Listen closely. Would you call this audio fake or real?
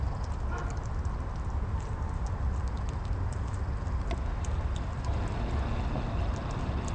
real